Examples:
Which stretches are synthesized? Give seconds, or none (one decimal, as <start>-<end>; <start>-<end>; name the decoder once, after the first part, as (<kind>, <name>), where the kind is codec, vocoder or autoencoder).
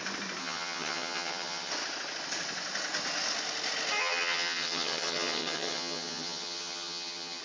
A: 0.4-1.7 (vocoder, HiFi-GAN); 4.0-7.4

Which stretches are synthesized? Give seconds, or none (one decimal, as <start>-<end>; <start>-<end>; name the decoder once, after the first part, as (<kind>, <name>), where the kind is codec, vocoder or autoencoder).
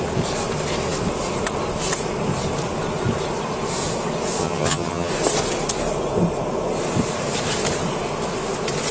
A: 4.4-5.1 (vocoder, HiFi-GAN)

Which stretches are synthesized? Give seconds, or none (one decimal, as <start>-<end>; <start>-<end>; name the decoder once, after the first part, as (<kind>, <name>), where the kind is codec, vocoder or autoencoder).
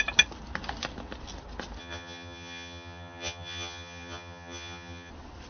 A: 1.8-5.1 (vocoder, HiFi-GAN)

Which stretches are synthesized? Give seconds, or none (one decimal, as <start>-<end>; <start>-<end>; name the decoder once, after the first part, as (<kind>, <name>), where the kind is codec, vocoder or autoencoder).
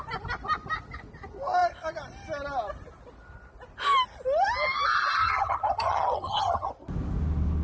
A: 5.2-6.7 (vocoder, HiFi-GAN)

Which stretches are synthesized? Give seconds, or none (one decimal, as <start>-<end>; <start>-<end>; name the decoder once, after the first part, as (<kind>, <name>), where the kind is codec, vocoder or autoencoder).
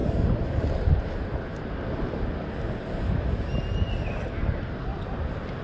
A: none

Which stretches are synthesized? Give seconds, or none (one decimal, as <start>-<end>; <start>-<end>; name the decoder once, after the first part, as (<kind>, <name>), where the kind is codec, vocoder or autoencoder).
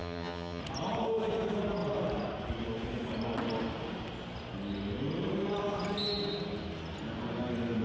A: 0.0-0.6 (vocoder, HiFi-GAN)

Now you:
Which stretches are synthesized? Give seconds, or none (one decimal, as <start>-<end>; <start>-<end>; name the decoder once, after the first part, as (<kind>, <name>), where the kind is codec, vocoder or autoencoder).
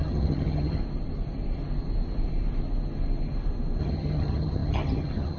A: 0.0-0.8 (vocoder, HiFi-GAN); 3.8-5.4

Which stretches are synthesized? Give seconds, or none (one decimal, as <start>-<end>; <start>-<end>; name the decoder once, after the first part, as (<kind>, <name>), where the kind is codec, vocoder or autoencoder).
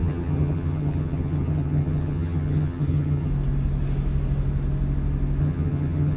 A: 0.0-3.3 (vocoder, HiFi-GAN); 5.4-6.2